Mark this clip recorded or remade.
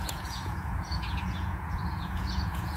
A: remade